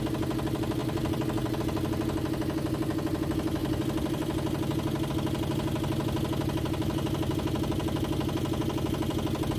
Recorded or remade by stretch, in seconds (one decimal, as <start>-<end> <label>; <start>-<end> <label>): 0.0-0.8 recorded; 0.8-1.6 remade; 1.6-3.6 recorded; 3.6-5.1 remade; 5.1-9.6 recorded